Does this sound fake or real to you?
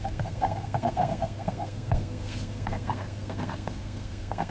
fake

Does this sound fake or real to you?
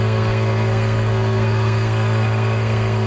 fake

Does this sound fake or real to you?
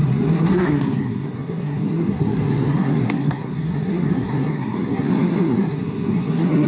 fake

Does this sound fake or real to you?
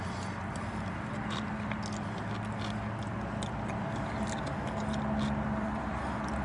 real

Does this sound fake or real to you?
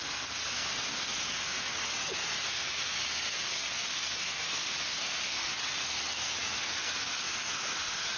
fake